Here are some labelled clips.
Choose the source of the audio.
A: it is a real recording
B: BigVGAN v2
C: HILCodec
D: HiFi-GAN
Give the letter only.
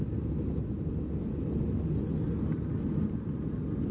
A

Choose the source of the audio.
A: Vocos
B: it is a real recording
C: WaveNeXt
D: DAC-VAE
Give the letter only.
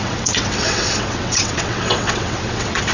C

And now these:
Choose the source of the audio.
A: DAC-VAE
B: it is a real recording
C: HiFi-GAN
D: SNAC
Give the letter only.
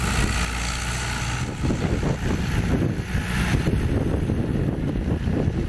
B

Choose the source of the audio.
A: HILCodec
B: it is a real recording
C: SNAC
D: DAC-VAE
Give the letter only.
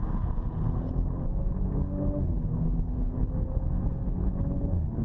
A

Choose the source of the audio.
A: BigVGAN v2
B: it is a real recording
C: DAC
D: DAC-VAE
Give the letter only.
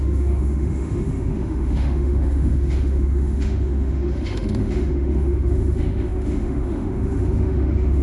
D